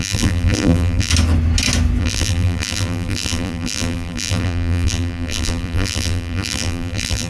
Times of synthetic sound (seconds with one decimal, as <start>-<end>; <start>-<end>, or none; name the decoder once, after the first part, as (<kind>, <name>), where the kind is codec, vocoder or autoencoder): 0.0-1.1 (vocoder, BigVGAN v2); 2.0-7.3